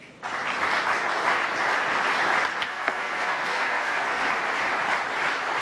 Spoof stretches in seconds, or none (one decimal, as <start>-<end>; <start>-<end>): 2.5-4.2